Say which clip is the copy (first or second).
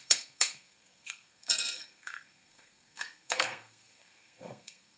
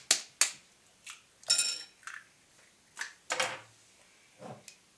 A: first